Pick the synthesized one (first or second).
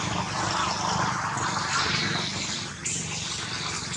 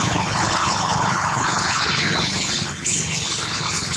second